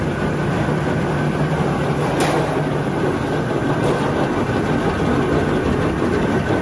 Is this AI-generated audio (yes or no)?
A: no